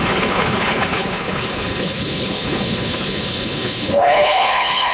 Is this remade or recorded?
remade